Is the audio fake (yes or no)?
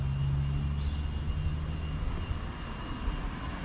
no